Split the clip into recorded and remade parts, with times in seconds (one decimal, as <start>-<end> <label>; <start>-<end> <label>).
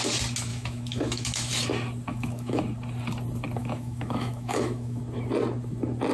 0.0-0.5 recorded; 0.5-1.5 remade; 1.5-2.1 recorded; 2.1-2.6 remade; 2.6-3.6 recorded; 3.6-5.0 remade; 5.0-6.1 recorded